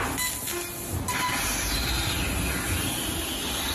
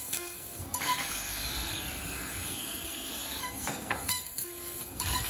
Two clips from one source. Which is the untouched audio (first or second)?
first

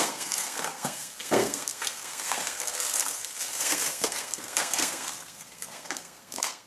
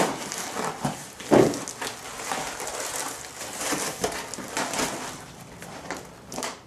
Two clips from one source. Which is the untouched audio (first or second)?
second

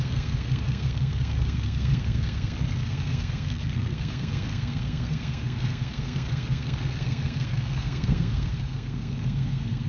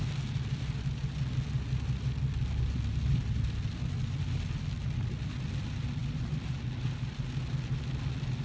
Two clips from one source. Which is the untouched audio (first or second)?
second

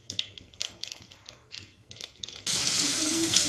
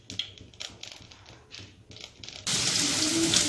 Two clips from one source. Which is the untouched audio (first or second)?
second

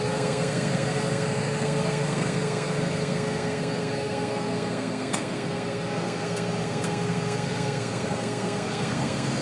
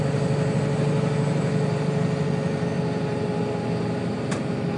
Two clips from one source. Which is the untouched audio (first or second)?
second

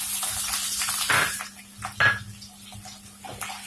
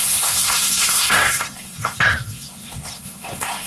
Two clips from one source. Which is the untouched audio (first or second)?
first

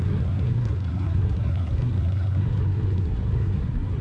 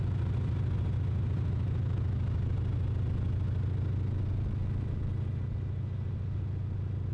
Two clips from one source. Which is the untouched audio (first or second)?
second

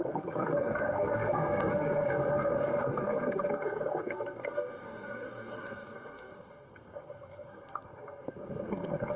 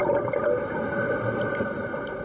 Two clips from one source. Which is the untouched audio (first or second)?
second